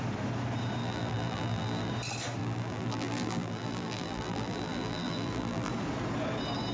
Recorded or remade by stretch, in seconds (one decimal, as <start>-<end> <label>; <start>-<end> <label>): 0.0-0.8 recorded; 0.8-1.9 remade; 1.9-2.4 recorded; 2.4-5.7 remade; 5.7-6.7 recorded